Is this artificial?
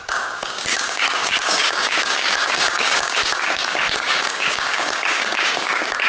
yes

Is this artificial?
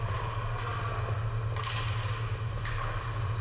no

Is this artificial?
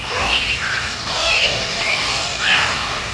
yes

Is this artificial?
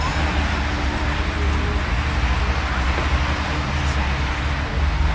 no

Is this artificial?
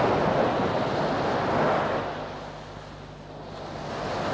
no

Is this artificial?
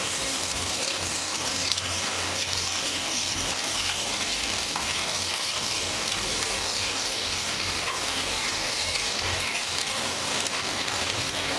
yes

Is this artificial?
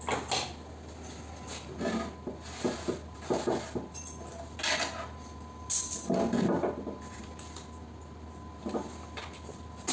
no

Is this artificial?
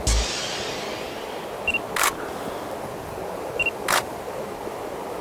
no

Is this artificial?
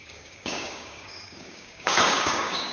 yes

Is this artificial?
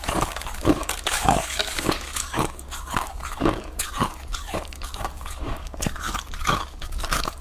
yes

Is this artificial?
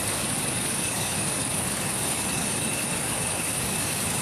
yes